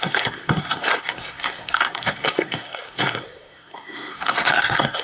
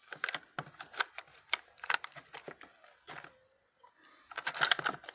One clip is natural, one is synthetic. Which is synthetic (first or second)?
first